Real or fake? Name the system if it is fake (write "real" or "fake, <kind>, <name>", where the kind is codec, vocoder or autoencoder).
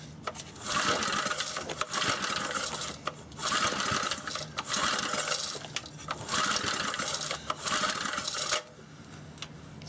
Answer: real